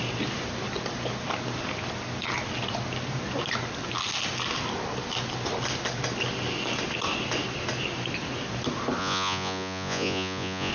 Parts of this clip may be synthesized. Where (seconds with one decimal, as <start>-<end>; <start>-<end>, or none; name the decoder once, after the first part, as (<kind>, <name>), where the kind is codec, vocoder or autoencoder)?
9.0-10.7 (vocoder, Vocos)